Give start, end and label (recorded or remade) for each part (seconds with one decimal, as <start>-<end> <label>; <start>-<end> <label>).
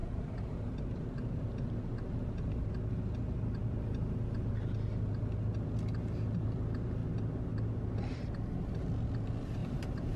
0.0-2.7 remade; 2.7-9.6 recorded; 9.6-10.2 remade